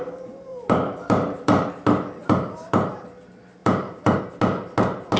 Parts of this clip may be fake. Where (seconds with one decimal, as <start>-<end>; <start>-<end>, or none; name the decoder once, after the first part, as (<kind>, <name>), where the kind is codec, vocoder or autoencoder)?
0.5-1.7 (vocoder, BigVGAN v2); 2.2-2.9; 3.6-4.2